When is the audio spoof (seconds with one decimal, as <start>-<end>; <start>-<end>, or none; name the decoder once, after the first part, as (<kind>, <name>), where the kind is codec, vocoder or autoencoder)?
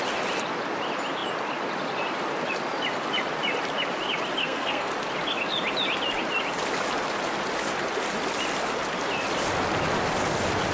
4.4-4.9 (codec, SNAC)